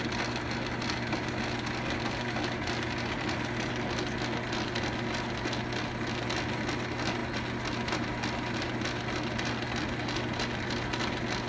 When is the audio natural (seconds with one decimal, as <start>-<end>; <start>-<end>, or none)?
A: 0.0-11.5